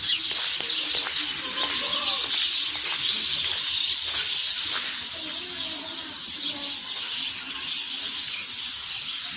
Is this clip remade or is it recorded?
recorded